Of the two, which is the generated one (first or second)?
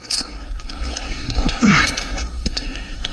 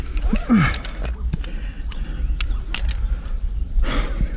first